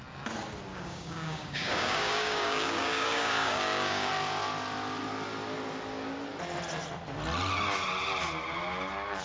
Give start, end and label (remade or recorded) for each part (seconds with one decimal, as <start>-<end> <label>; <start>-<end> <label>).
0.0-0.7 recorded; 0.7-4.1 remade; 4.1-9.2 recorded